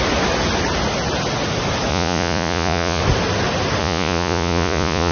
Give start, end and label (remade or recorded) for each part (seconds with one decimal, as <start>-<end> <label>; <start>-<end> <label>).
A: 0.0-1.9 recorded; 1.9-3.0 remade; 3.0-3.8 recorded; 3.8-5.1 remade